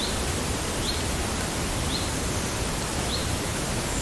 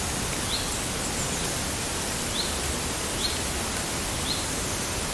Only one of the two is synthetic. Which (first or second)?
first